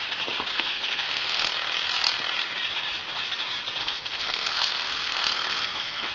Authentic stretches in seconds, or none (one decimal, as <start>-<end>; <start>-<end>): 0.0-0.5; 1.5-3.8